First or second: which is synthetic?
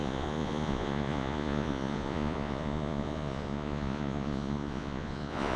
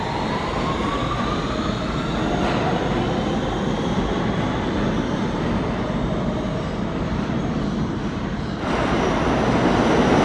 first